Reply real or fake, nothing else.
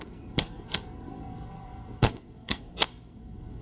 fake